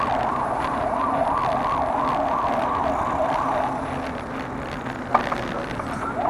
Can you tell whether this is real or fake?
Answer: real